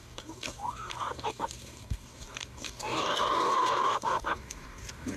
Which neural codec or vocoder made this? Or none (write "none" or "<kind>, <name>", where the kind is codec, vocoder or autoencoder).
codec, DAC